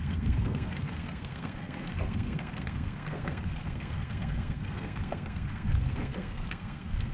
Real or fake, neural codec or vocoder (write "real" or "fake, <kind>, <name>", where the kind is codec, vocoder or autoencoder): fake, codec, SNAC